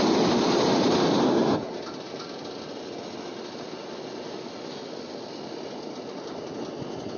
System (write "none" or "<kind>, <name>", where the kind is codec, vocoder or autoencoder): none